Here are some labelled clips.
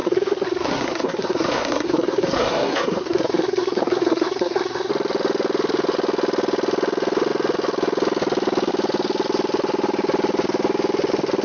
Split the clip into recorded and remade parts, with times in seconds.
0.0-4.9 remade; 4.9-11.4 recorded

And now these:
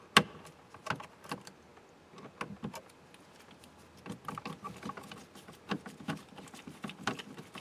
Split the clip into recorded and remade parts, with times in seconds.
0.0-7.6 recorded

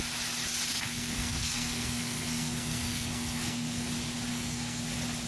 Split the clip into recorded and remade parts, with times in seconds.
0.0-0.7 recorded; 0.7-3.9 remade; 3.9-4.3 recorded; 4.3-4.8 remade; 4.8-5.3 recorded

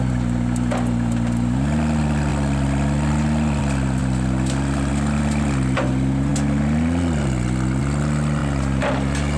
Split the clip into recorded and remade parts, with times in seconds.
0.0-9.4 recorded

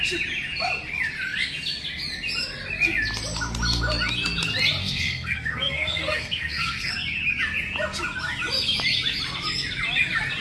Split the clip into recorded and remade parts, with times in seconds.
0.0-4.8 recorded; 4.8-6.9 remade; 6.9-10.4 recorded

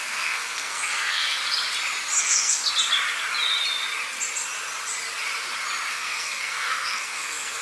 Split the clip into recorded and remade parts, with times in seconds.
0.0-1.4 remade; 1.4-2.2 recorded; 2.2-2.6 remade; 2.6-5.9 recorded; 5.9-7.6 remade

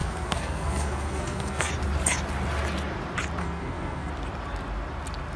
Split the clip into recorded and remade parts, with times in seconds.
0.0-1.7 remade; 1.7-3.4 recorded; 3.4-4.1 remade; 4.1-5.4 recorded